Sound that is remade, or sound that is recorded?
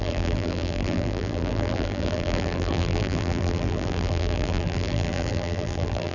remade